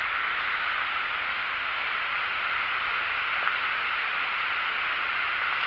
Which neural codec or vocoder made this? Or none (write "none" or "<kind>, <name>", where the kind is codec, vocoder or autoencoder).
none